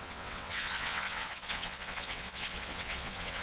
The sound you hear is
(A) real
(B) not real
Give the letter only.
B